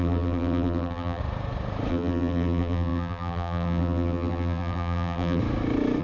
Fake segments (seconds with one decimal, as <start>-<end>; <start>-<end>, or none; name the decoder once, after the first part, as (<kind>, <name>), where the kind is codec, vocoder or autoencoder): 0.0-1.2 (vocoder, BigVGAN v2); 1.9-5.4